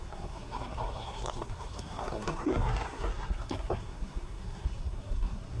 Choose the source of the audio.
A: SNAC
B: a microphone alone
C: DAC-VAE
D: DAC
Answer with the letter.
A